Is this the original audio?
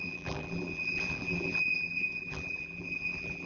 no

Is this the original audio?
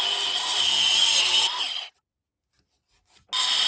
yes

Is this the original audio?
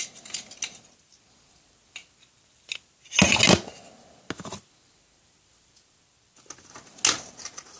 yes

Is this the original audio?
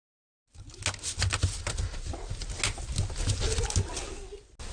yes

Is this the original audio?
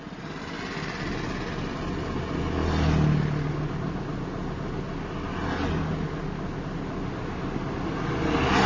yes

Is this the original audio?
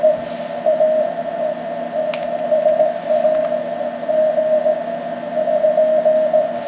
yes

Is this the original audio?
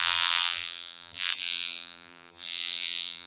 no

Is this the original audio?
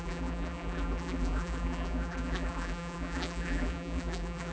no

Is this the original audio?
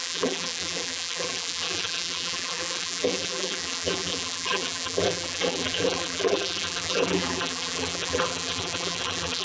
no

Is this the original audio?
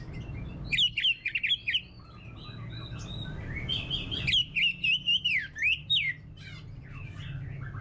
yes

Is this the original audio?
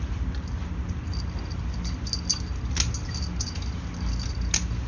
yes